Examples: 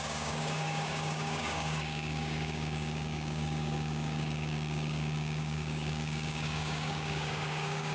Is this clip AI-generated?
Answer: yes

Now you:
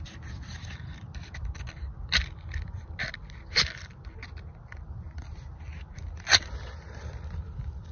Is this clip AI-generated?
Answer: no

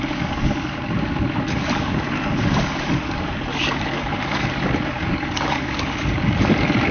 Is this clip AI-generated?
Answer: yes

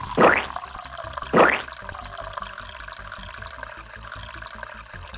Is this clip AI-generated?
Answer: no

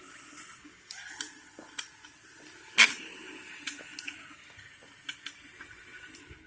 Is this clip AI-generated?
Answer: no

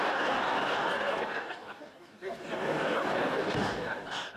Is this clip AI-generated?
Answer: yes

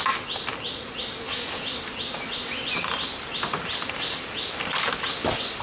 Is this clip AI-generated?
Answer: no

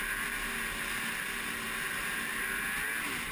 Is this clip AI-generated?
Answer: no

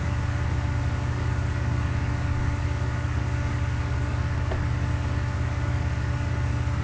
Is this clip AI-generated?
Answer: yes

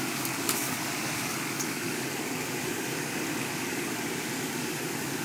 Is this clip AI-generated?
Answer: yes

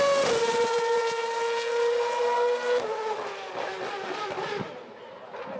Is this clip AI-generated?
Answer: no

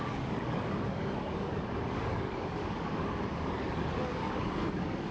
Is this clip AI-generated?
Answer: yes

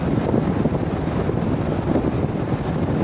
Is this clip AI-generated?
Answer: no